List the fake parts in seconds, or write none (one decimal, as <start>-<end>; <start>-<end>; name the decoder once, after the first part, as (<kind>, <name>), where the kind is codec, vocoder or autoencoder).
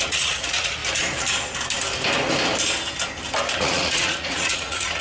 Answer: 0.0-0.8 (vocoder, Vocos); 3.6-5.0